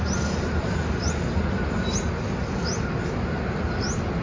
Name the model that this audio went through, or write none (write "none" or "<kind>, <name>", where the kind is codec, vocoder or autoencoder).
none